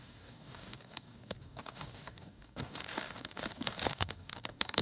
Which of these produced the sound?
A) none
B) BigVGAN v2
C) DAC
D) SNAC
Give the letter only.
C